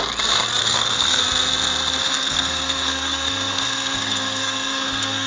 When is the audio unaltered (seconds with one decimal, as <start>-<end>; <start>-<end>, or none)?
0.0-0.6; 1.2-2.0